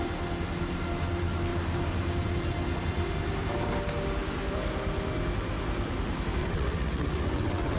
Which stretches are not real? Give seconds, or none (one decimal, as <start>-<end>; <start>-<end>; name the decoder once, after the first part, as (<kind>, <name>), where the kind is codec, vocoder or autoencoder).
6.4-7.8 (vocoder, WaveNeXt)